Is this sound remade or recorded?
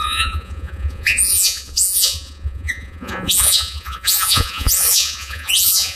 remade